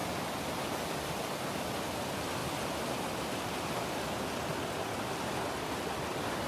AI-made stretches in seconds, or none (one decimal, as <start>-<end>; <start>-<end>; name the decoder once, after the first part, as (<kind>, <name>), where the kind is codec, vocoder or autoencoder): none